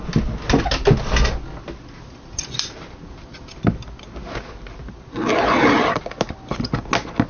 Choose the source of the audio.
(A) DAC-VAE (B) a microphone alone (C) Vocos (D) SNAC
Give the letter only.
B